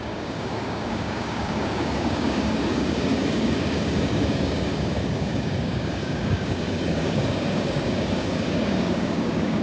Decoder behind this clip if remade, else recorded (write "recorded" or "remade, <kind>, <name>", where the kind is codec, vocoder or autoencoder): remade, codec, DAC